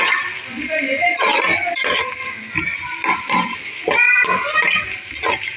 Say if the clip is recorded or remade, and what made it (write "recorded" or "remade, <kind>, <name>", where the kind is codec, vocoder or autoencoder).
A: recorded